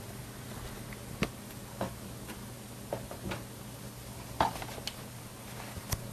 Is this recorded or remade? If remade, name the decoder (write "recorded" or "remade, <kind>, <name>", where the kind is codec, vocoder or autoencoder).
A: recorded